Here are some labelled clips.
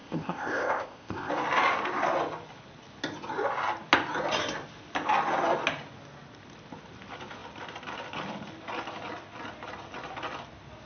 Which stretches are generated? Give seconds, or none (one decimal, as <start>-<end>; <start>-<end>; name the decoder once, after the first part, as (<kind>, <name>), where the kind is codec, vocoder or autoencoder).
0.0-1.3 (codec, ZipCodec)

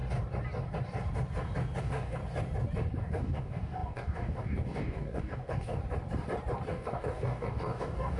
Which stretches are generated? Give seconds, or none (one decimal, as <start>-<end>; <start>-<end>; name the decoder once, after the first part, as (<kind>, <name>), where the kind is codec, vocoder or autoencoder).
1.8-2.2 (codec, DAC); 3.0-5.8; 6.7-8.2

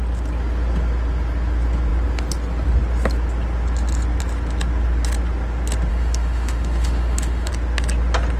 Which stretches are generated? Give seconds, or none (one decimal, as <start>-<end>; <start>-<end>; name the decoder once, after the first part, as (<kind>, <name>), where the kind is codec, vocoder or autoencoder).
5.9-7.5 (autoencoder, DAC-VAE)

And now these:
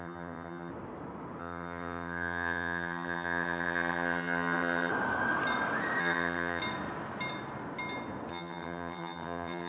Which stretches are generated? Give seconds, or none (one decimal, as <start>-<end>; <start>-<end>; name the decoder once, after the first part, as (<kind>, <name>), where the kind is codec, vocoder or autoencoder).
0.0-0.7 (vocoder, HiFi-GAN); 1.4-4.9; 6.0-6.6; 8.3-9.7